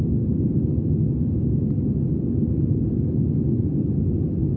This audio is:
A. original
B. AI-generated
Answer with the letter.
A